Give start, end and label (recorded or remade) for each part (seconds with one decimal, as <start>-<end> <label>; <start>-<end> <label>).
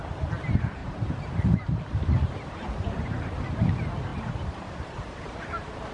0.0-0.8 recorded; 0.8-3.5 remade; 3.5-4.1 recorded; 4.1-5.9 remade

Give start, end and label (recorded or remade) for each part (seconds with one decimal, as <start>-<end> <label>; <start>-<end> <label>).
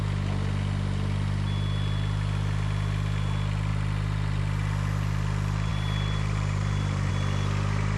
0.0-5.7 recorded; 5.7-7.1 remade; 7.1-8.0 recorded